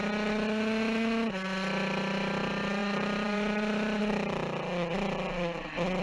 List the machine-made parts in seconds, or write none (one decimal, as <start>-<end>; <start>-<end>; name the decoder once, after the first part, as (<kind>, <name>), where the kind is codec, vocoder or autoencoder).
2.8-4.0 (vocoder, BigVGAN v2)